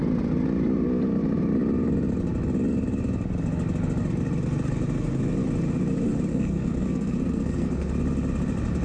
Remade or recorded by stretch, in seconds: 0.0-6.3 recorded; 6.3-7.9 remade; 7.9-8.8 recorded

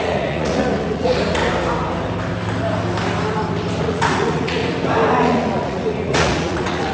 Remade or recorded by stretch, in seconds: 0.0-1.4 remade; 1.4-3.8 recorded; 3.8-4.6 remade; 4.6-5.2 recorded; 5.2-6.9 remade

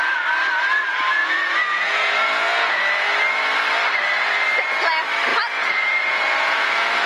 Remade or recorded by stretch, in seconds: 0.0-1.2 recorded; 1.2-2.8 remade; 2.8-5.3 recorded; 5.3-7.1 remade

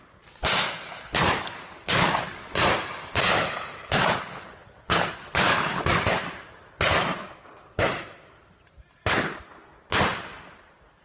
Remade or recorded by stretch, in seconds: 0.0-11.0 recorded